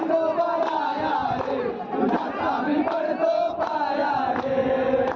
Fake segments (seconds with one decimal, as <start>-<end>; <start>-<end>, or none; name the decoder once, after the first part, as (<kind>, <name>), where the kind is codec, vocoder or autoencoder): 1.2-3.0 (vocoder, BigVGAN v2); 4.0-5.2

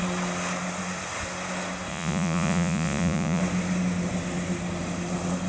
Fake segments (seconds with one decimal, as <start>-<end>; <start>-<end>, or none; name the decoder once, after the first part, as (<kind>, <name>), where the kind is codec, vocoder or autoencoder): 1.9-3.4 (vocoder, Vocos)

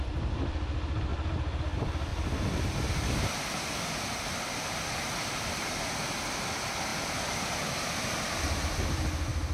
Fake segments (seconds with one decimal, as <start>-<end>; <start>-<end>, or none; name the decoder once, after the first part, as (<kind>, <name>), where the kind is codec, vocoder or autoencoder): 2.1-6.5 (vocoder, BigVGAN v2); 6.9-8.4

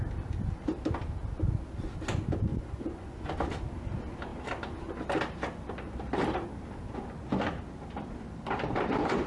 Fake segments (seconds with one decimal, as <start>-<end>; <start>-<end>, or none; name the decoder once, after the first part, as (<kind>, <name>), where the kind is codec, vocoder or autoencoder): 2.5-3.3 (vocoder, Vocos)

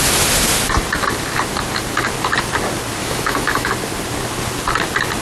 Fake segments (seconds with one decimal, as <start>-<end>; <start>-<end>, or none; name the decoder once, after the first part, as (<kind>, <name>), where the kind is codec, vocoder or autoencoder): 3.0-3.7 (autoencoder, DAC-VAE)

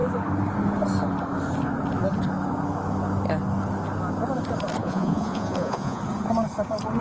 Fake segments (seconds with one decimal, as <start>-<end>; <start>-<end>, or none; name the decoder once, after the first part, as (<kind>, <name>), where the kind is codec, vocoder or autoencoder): 4.8-6.0 (vocoder, Vocos)

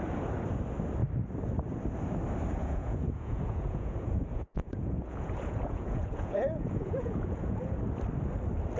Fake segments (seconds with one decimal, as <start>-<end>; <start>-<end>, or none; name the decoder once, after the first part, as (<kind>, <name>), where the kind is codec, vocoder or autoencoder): 2.6-7.8 (vocoder, Vocos)